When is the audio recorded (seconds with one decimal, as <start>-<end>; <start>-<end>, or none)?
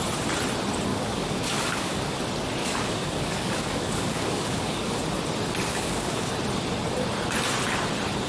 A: 0.0-0.9; 2.2-2.6; 4.9-5.7; 6.3-8.3